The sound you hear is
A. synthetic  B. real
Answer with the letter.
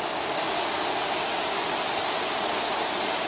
B